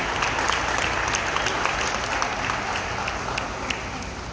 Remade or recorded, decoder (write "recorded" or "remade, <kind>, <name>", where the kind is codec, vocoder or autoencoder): recorded